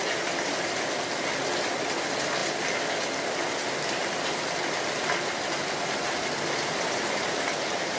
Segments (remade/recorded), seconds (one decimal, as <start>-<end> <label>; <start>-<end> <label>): 0.0-8.0 recorded